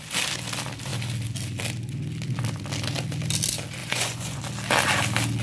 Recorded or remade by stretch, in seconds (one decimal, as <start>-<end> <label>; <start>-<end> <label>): 0.0-3.8 recorded; 3.8-4.4 remade; 4.4-5.4 recorded